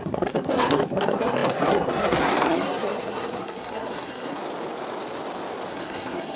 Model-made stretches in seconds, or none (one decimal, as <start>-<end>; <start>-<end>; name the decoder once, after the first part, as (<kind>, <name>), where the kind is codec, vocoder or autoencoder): 0.0-4.4 (codec, SNAC); 5.7-6.4